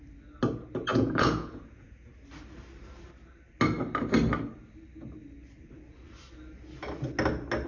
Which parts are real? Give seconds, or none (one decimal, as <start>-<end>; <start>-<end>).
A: 0.0-0.9; 2.1-7.7